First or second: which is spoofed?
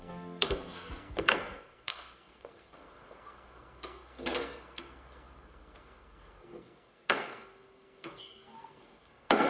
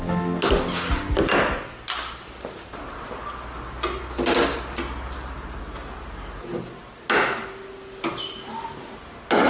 first